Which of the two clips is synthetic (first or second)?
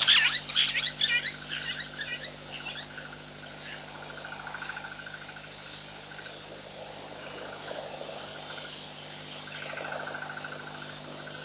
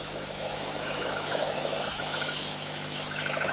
second